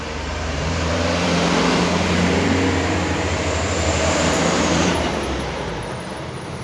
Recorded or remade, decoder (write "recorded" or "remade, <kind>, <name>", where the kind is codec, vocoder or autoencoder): remade, vocoder, BigVGAN v2